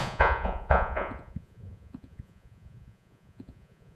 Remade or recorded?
remade